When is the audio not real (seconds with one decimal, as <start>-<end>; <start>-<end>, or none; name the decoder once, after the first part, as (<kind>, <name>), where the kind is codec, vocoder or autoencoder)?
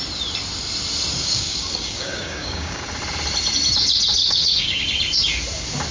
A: 1.1-2.8 (codec, DAC); 4.2-4.8